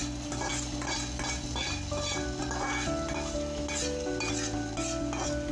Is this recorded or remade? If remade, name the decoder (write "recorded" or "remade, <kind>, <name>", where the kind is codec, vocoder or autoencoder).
recorded